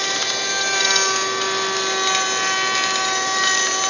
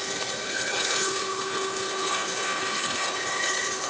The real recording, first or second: first